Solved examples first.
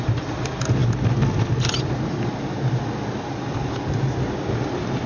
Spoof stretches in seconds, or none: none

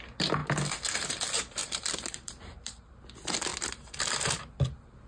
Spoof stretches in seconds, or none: 1.6-2.9 (vocoder, BigVGAN v2)

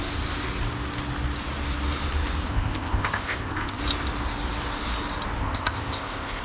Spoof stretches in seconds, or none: 2.5-3.8 (codec, ZipCodec); 5.4-6.4

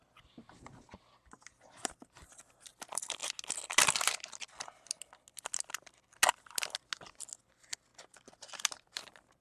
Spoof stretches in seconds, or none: none

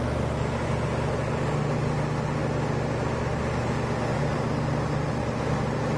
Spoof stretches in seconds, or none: none

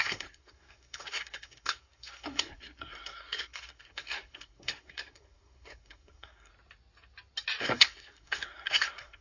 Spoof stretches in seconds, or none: 0.0-6.5 (codec, SNAC); 7.6-9.2

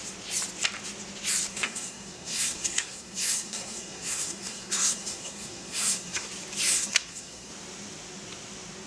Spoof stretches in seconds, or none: 1.5-6.3 (codec, SNAC); 6.7-7.5